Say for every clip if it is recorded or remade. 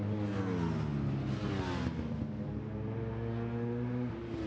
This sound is recorded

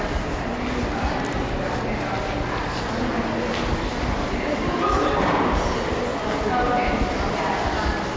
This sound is recorded